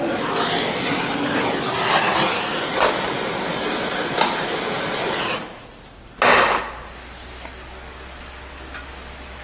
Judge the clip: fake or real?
real